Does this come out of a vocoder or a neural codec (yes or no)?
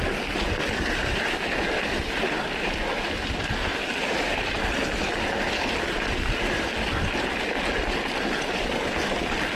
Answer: no